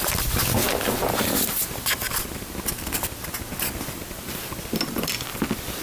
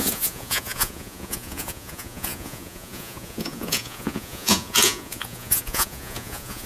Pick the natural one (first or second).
first